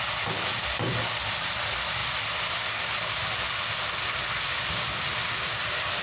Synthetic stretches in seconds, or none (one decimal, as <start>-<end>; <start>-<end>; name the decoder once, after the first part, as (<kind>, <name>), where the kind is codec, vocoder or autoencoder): none